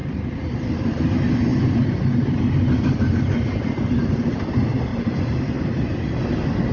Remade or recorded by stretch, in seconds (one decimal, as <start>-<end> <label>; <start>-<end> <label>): 0.0-0.7 remade; 0.7-1.5 recorded; 1.5-3.1 remade; 3.1-4.9 recorded; 4.9-6.2 remade; 6.2-6.7 recorded